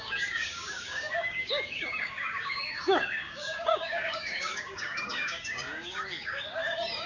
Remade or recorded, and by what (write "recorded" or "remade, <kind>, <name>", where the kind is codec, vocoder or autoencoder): remade, codec, DAC